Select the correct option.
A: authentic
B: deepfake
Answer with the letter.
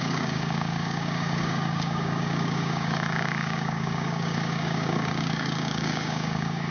B